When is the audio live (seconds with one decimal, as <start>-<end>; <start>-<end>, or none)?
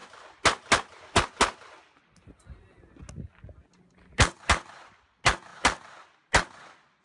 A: 0.0-7.0